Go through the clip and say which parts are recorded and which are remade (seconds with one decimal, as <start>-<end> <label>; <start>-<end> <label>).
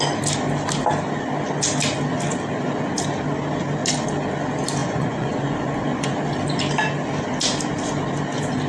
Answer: 0.0-4.8 recorded; 4.8-6.1 remade; 6.1-8.7 recorded